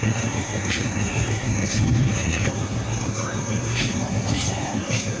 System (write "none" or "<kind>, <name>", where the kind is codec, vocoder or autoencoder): codec, SNAC